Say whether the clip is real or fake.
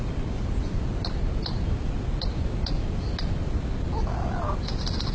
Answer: real